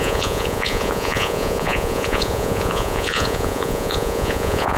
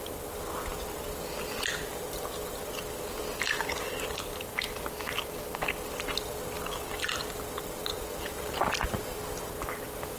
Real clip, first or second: second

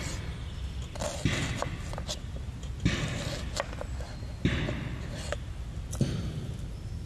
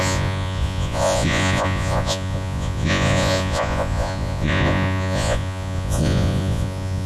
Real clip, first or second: first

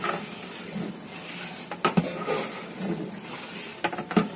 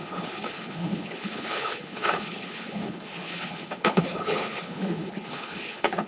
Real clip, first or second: first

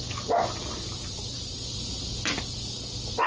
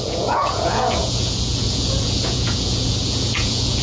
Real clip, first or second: first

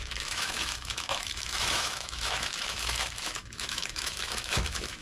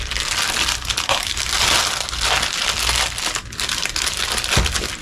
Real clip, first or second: second